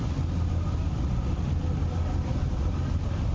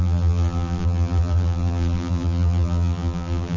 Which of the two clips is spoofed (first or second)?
second